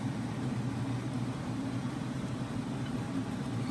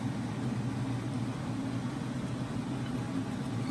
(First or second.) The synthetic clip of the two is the first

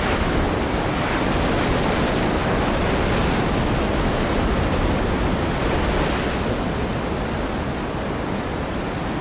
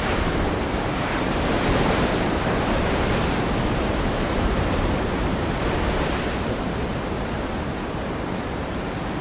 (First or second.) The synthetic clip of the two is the second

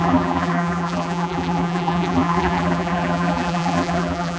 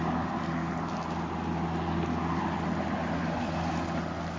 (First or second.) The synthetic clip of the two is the first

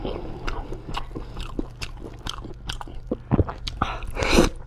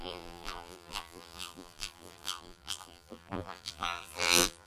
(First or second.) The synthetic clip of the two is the second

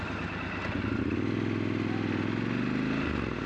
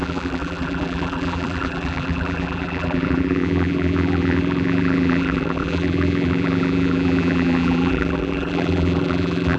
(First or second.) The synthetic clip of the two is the second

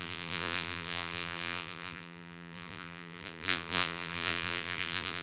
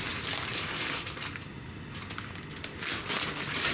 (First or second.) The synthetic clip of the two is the first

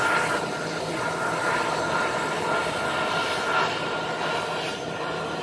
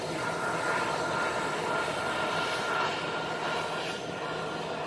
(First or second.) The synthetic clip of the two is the second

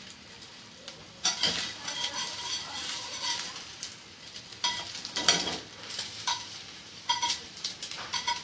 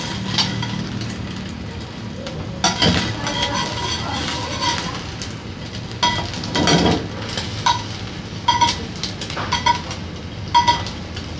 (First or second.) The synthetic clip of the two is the first